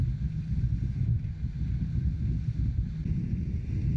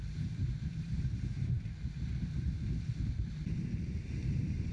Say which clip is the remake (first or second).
second